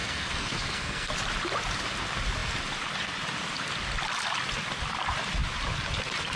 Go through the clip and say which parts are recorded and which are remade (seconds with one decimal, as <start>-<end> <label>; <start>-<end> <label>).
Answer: 0.0-1.1 remade; 1.1-6.4 recorded